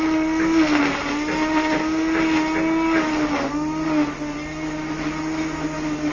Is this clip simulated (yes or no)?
no